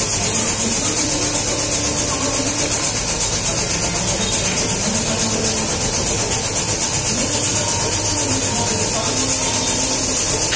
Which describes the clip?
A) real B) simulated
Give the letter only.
A